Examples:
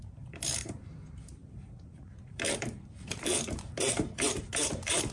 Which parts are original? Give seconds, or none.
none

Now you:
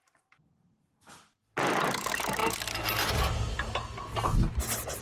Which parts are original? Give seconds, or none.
0.0-5.0

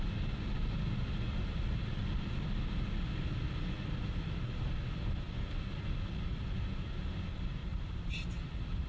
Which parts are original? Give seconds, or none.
0.0-7.6; 8.1-8.9

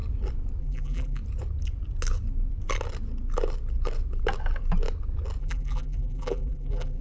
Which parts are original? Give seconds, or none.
0.0-0.6; 1.2-5.4